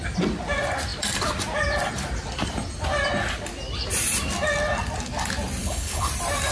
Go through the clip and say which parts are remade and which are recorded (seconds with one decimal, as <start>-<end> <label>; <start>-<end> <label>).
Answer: 0.0-5.6 recorded; 5.6-6.1 remade; 6.1-6.5 recorded